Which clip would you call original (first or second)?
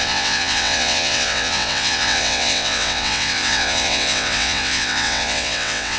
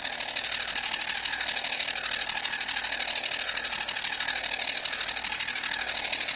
second